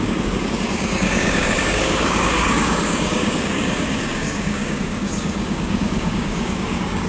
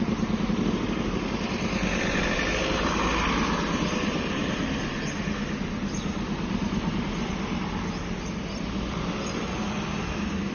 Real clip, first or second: second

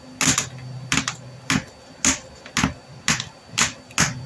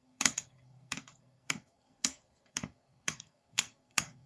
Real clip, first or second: first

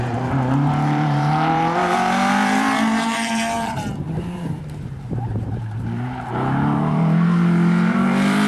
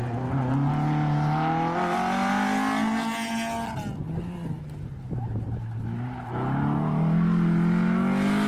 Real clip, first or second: second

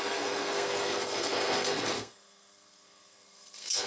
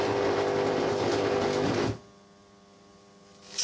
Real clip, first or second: second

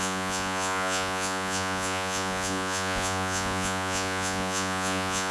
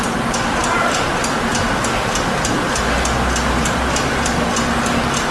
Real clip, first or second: second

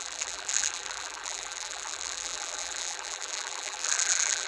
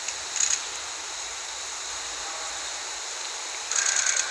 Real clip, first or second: second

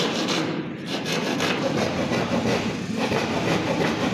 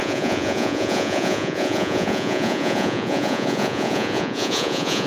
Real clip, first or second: first